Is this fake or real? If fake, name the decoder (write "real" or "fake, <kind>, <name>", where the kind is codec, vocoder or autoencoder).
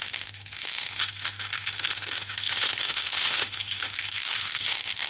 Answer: fake, autoencoder, DAC-VAE